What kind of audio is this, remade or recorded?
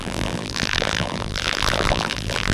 remade